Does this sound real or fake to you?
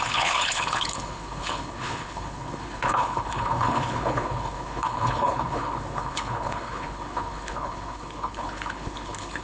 fake